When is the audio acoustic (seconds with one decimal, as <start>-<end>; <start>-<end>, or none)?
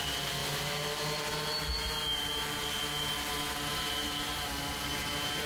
0.0-5.5